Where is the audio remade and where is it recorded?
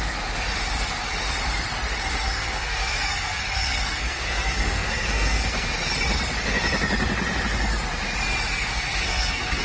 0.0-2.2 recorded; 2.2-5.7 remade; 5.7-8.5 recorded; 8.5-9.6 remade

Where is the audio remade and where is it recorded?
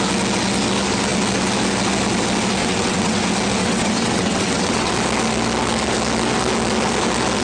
0.0-2.6 recorded; 2.6-3.2 remade; 3.2-3.6 recorded; 3.6-4.9 remade; 4.9-7.4 recorded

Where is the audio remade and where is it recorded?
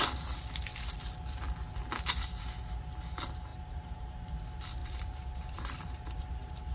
0.0-3.5 recorded; 3.5-4.1 remade; 4.1-4.8 recorded; 4.8-6.3 remade; 6.3-6.7 recorded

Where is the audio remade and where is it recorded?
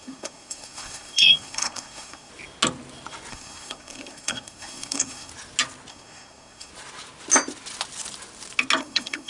0.0-2.3 remade; 2.3-3.3 recorded; 3.3-5.3 remade; 5.3-5.9 recorded; 5.9-6.7 remade; 6.7-8.8 recorded; 8.8-9.3 remade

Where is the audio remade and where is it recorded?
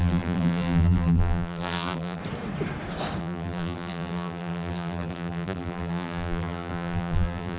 0.0-2.2 remade; 2.2-3.2 recorded; 3.2-7.6 remade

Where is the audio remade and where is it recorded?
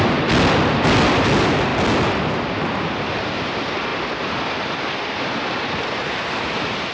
0.0-6.9 recorded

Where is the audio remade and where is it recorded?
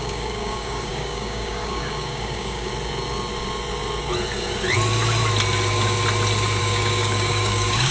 0.0-2.7 remade; 2.7-6.6 recorded; 6.6-7.9 remade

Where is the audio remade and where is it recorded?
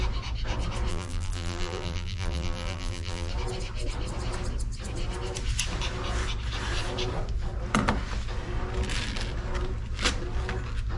0.0-0.9 recorded; 0.9-3.3 remade; 3.3-11.0 recorded